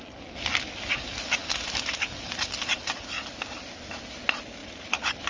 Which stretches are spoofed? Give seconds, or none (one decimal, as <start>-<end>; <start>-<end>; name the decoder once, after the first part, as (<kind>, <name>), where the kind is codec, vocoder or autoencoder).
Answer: 4.6-5.3 (vocoder, BigVGAN v2)